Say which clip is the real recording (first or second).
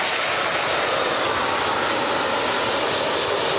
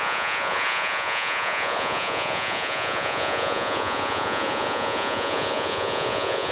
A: first